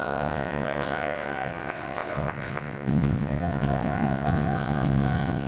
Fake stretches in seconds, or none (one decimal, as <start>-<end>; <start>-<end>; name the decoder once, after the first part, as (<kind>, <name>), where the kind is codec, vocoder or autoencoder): 0.0-5.5 (vocoder, WaveNeXt)